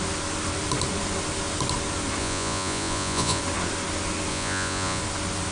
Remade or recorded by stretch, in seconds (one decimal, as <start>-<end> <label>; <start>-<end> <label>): 0.0-2.2 recorded; 2.2-3.4 remade; 3.4-4.3 recorded; 4.3-5.0 remade; 5.0-5.5 recorded